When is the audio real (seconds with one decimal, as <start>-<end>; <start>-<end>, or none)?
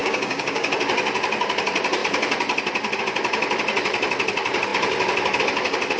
0.7-6.0